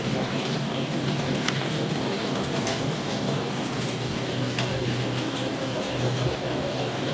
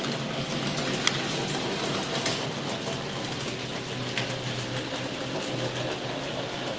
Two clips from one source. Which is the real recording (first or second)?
second